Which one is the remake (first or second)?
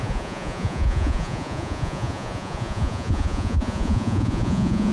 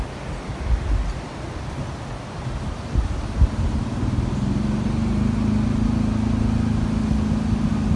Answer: first